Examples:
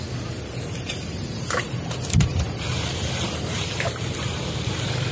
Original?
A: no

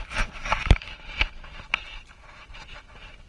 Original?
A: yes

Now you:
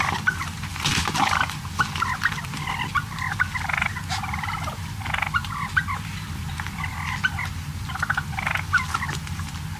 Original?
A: yes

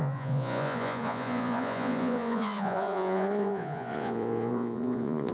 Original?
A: no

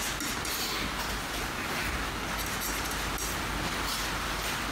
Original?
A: yes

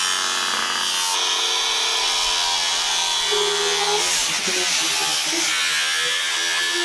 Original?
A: yes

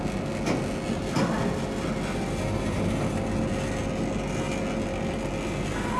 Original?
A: yes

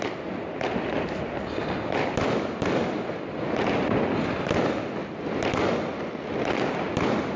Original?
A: yes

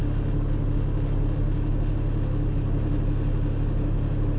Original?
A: yes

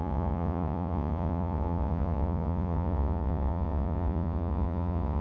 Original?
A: no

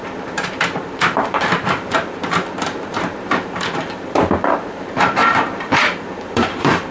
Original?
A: no